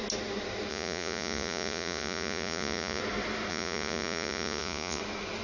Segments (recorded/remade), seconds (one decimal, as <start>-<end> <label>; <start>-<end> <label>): 0.0-0.7 recorded; 0.7-3.0 remade; 3.0-3.5 recorded; 3.5-5.0 remade; 5.0-5.4 recorded